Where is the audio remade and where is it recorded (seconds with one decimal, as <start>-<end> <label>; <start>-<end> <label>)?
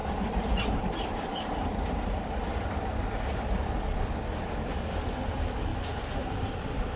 0.0-2.4 remade; 2.4-5.7 recorded; 5.7-7.0 remade